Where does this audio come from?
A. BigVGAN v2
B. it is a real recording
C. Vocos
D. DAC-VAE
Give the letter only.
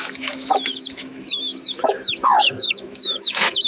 D